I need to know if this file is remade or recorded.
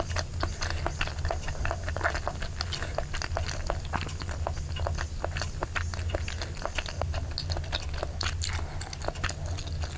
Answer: recorded